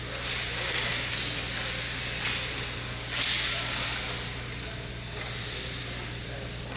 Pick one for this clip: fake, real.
real